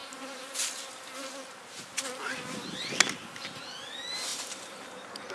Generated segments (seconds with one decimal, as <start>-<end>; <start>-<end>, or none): 0.0-1.1; 4.3-5.3